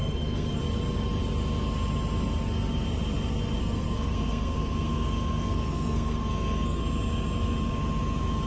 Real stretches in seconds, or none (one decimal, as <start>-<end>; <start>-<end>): 0.6-3.6; 6.8-8.5